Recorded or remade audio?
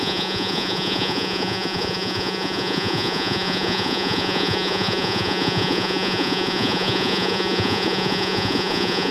remade